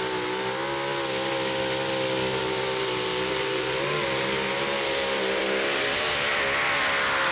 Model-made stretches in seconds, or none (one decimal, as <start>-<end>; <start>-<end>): 2.3-6.4